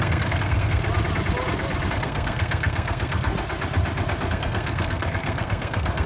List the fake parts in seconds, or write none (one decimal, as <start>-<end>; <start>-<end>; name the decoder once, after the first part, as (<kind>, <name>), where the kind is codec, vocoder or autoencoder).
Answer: 0.0-0.8 (codec, SNAC); 1.9-3.3; 4.3-6.1